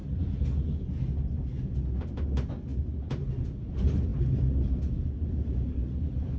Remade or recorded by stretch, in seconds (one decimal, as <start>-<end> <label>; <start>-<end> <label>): 0.0-6.4 recorded

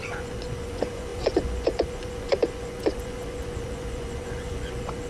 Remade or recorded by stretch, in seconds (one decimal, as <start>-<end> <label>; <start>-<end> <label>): 0.0-5.1 remade

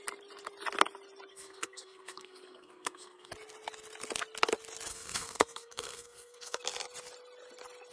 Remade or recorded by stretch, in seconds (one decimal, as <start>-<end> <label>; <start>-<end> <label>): 0.0-1.3 recorded; 1.3-3.3 remade; 3.3-4.9 recorded; 4.9-6.6 remade; 6.6-7.9 recorded

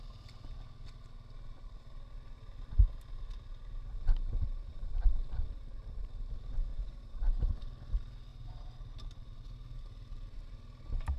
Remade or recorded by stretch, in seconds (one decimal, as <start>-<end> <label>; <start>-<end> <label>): 0.0-4.7 recorded; 4.7-6.1 remade; 6.1-6.7 recorded; 6.7-7.3 remade; 7.3-8.3 recorded; 8.3-9.4 remade; 9.4-11.2 recorded

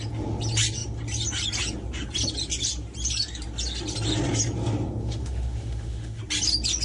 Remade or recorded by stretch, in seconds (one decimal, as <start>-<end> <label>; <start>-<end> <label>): 0.0-5.0 recorded; 5.0-6.2 remade; 6.2-6.8 recorded

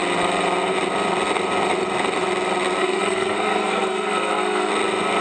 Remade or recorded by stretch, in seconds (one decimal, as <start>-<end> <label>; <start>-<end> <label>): 0.0-2.8 recorded; 2.8-4.7 remade; 4.7-5.2 recorded

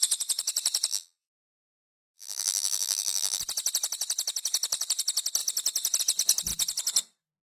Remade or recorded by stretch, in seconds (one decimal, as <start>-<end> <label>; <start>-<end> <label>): 0.0-0.9 recorded; 0.9-3.4 remade; 3.4-7.4 recorded

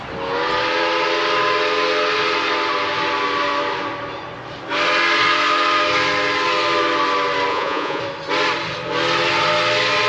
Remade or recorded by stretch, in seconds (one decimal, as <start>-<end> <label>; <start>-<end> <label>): 0.0-7.5 recorded; 7.5-8.0 remade; 8.0-10.1 recorded